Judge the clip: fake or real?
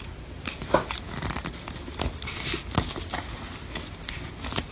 real